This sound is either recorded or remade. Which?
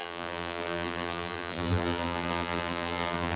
remade